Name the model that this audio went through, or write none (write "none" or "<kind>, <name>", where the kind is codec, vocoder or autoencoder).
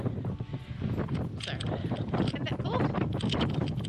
none